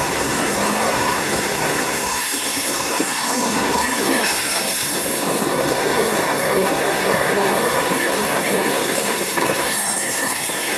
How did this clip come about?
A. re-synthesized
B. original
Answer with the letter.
A